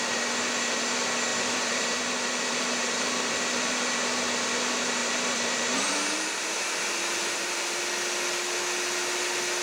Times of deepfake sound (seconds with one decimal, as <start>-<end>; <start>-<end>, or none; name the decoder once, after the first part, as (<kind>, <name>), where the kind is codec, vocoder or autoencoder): 1.3-4.0 (vocoder, BigVGAN v2); 5.0-7.8

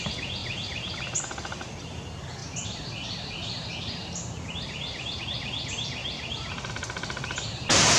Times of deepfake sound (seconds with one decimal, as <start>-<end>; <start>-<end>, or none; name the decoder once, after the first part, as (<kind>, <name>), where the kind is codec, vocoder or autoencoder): 0.4-1.2 (vocoder, BigVGAN v2); 2.4-5.2; 6.0-6.7

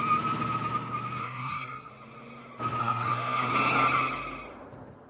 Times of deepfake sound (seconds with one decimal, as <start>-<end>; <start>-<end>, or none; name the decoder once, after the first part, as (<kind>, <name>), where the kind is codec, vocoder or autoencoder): 1.2-1.9 (codec, SNAC); 2.8-3.5